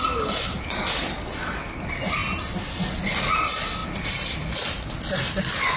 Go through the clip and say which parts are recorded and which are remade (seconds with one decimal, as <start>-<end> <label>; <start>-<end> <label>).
0.0-5.8 recorded